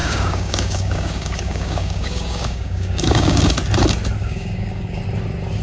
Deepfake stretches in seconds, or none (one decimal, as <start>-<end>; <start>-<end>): 0.0-3.4; 4.2-5.0